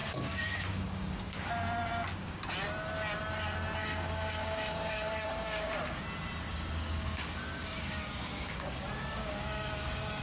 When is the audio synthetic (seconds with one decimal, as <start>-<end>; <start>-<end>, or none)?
0.0-1.5; 3.8-5.7; 6.5-10.2